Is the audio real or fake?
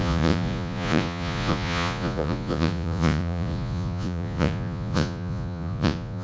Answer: fake